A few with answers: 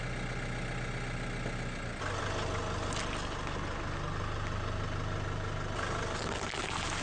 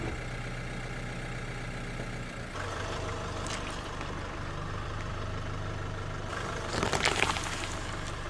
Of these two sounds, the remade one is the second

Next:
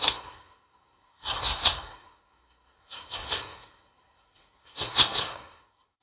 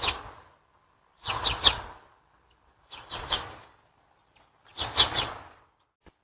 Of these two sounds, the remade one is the first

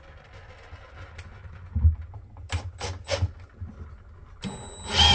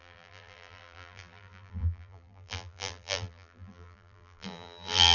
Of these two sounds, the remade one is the second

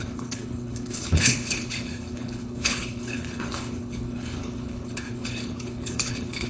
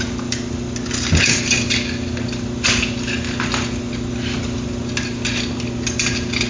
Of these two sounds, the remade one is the first